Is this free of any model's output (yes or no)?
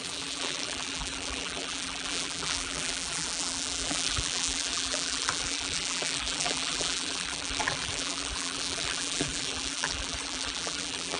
no